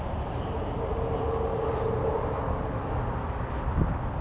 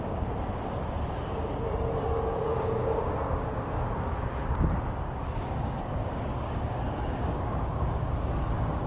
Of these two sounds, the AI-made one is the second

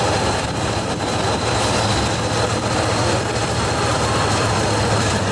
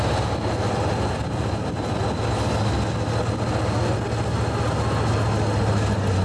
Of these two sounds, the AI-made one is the first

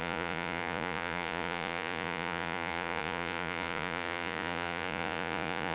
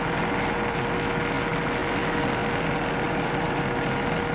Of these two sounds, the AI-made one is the first